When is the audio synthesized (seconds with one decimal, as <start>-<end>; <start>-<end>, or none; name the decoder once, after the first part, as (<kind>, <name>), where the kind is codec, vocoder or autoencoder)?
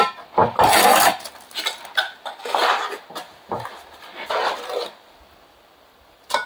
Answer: none